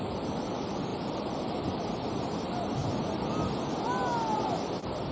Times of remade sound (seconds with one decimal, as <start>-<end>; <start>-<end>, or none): 0.9-1.5